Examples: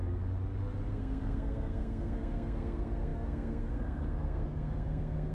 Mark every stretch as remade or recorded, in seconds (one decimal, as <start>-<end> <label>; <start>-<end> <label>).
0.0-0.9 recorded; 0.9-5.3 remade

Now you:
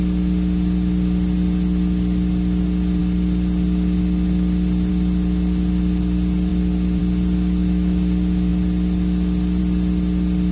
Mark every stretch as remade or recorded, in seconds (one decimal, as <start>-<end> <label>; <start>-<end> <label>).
0.0-10.5 recorded

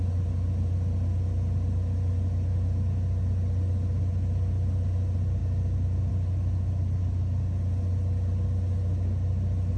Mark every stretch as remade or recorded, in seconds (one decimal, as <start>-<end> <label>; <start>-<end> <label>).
0.0-9.8 recorded

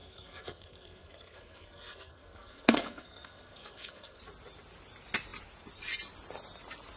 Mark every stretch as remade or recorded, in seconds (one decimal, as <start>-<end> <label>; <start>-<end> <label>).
0.0-4.2 remade; 4.2-7.0 recorded